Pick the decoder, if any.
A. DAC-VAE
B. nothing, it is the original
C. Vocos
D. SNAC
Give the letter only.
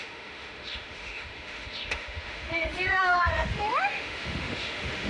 A